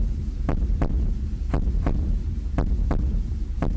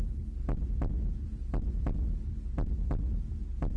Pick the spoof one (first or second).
first